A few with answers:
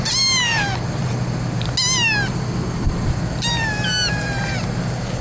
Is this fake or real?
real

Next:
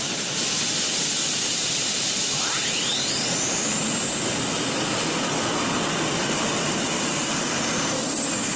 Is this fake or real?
real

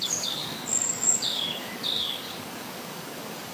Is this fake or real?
fake